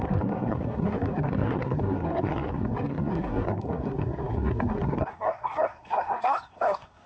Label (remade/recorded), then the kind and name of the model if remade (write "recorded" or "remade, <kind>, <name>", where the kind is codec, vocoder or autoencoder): remade, codec, SNAC